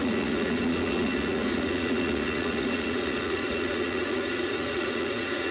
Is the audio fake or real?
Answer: fake